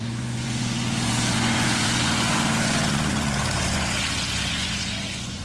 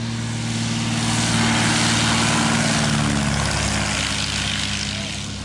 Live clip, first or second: second